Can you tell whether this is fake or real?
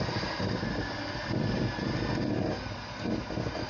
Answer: real